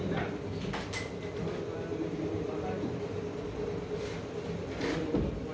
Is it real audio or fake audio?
real